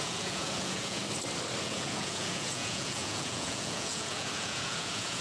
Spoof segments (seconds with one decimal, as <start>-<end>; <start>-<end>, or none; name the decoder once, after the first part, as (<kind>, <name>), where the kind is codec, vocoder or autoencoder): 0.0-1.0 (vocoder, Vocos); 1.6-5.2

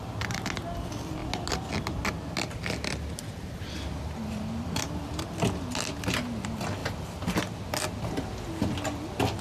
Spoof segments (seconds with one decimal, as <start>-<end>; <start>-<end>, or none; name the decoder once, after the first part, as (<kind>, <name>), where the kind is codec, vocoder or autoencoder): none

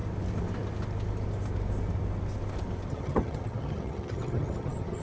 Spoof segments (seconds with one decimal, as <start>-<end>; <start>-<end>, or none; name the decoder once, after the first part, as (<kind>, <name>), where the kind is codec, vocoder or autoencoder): 2.9-5.0 (vocoder, HiFi-GAN)

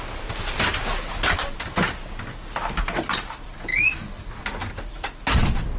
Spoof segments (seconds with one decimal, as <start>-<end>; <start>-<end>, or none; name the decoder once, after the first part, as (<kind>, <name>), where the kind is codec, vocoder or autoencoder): none

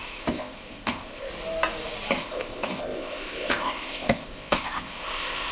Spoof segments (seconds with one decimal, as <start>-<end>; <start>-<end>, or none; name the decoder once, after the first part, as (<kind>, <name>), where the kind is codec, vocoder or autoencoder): 0.0-1.3 (codec, ZipCodec); 2.2-5.5

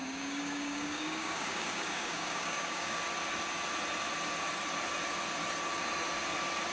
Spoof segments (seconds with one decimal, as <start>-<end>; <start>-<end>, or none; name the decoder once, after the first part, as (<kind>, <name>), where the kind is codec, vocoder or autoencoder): 0.0-3.0 (codec, DAC)